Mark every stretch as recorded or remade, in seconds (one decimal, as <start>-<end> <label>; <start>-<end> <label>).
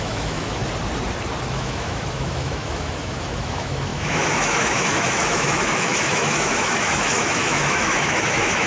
0.0-0.6 remade; 0.6-1.5 recorded; 1.5-8.7 remade